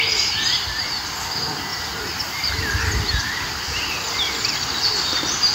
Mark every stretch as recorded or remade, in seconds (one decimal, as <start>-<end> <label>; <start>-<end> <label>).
0.0-1.7 recorded; 1.7-3.9 remade; 3.9-5.5 recorded